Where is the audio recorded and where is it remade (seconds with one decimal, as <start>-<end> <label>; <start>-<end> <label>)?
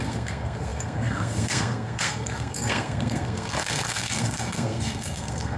0.0-5.6 remade